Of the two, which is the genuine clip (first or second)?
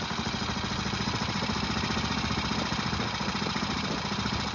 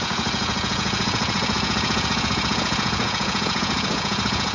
first